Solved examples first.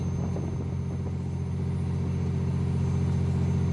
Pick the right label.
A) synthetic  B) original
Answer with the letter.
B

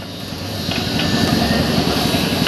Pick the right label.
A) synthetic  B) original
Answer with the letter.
B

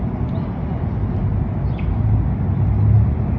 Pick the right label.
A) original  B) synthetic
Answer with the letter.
A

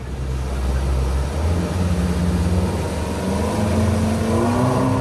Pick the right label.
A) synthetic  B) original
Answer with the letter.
B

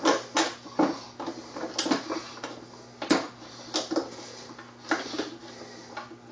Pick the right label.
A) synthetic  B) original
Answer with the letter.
B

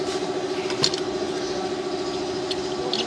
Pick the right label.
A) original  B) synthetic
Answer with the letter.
A